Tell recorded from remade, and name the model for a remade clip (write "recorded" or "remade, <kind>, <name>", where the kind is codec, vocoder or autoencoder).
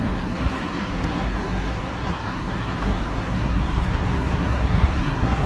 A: remade, codec, SNAC